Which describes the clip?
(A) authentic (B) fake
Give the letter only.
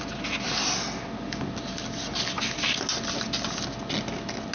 A